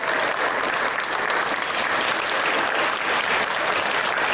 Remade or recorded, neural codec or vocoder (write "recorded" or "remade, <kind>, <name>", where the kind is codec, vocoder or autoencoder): recorded